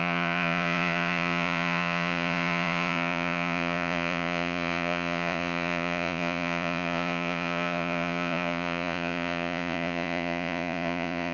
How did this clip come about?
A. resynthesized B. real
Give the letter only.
A